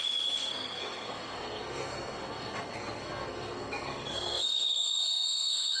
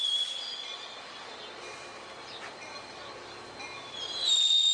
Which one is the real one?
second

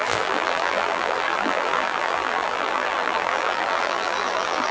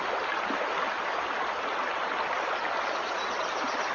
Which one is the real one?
second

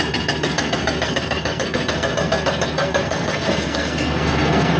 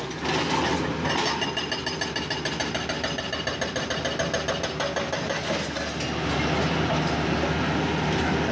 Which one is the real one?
second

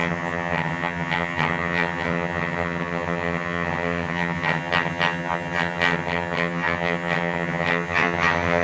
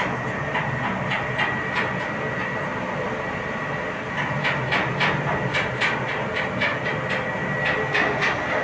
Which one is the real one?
second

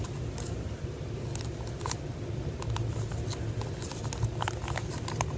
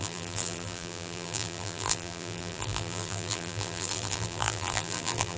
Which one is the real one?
first